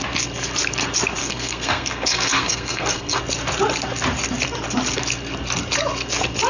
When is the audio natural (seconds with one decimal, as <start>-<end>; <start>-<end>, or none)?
0.0-1.2; 3.2-6.5